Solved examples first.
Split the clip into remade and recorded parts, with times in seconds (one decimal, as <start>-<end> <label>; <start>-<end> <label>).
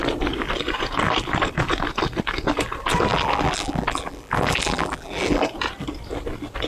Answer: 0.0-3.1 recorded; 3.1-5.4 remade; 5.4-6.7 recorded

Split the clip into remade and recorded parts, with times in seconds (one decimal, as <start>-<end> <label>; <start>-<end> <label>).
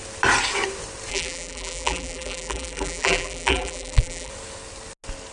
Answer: 0.0-1.1 recorded; 1.1-4.3 remade; 4.3-5.3 recorded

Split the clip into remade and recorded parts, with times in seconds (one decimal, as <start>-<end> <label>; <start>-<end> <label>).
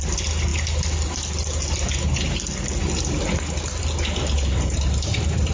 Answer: 0.0-5.5 recorded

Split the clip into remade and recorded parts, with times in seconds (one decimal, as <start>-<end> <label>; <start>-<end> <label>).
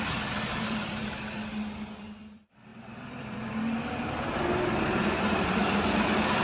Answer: 0.0-1.0 remade; 1.0-2.0 recorded; 2.0-5.6 remade; 5.6-6.4 recorded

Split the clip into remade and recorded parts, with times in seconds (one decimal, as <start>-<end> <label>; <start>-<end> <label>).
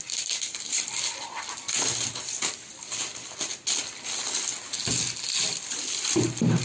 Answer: 0.0-3.5 remade; 3.5-5.5 recorded; 5.5-6.6 remade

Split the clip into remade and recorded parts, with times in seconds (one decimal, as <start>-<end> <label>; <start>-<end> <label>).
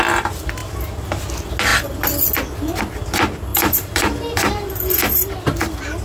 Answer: 0.0-3.5 recorded; 3.5-5.2 remade; 5.2-6.0 recorded